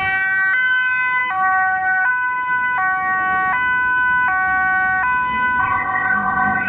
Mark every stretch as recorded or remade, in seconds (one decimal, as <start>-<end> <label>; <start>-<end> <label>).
0.0-5.6 recorded; 5.6-6.7 remade